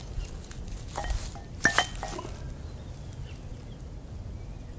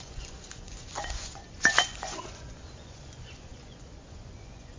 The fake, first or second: second